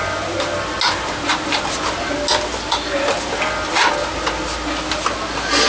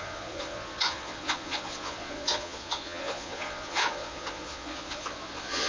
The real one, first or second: first